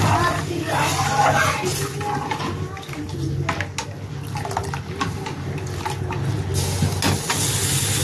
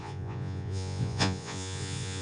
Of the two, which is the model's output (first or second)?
second